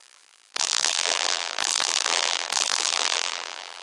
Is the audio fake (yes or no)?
yes